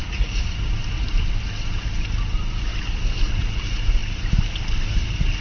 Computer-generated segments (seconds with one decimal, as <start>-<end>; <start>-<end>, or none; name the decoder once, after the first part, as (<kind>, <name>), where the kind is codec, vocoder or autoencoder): 0.0-0.7 (vocoder, Vocos)